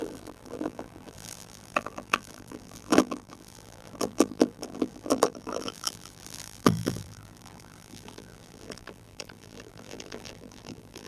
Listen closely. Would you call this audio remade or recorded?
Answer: remade